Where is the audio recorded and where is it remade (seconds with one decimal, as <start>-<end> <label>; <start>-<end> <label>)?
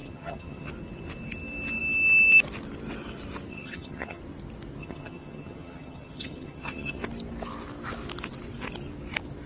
0.0-0.7 remade; 0.7-3.5 recorded; 3.5-4.2 remade; 4.2-4.8 recorded; 4.8-7.0 remade; 7.0-9.5 recorded